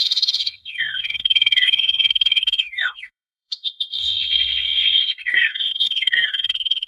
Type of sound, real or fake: fake